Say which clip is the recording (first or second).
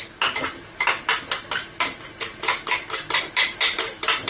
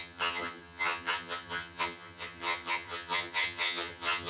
first